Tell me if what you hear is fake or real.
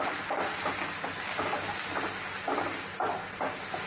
real